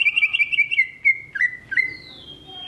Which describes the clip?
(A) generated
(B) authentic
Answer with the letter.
B